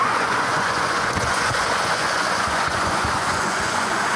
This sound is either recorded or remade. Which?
remade